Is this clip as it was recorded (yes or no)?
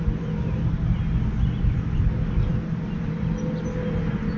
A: yes